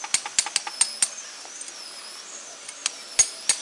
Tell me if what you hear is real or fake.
real